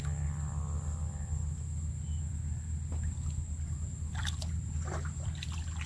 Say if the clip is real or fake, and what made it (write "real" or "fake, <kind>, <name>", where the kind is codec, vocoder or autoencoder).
real